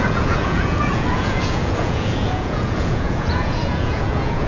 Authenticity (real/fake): fake